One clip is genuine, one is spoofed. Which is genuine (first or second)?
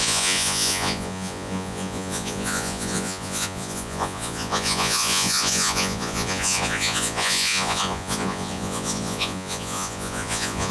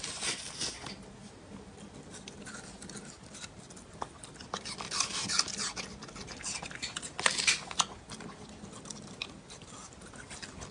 second